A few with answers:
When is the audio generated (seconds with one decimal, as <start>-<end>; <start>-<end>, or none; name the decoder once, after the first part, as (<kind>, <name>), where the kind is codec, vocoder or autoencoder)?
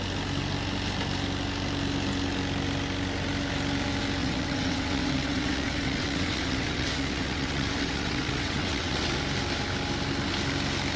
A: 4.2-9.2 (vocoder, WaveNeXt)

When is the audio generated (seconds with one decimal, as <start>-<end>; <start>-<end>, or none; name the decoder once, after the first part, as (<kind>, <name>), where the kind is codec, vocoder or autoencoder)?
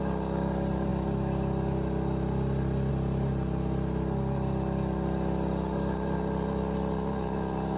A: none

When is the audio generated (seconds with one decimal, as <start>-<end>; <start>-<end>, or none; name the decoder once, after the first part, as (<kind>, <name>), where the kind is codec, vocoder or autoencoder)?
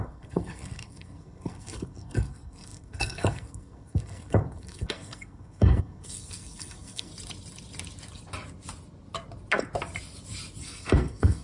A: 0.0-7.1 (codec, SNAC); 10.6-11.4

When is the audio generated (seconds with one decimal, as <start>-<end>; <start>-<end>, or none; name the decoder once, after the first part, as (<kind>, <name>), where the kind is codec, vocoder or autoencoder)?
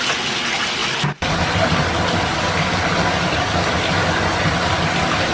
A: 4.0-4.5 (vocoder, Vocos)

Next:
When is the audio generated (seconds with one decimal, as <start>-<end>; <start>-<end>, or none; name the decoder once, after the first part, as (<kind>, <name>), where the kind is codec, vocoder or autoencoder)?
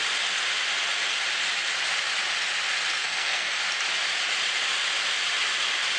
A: 3.0-3.6 (codec, SNAC)